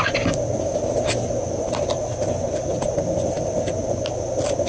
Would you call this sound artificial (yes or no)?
no